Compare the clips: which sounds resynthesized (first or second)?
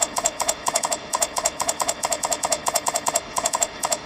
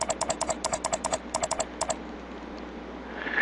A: first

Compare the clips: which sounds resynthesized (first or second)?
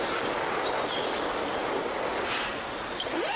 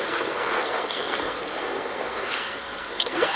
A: second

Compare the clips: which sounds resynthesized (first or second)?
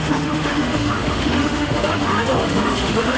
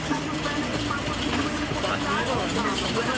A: first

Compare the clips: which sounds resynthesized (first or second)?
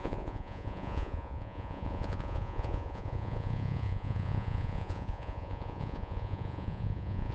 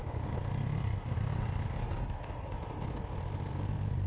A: first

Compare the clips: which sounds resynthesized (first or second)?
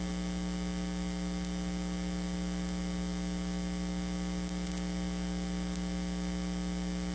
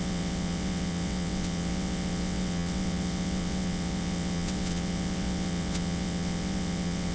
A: second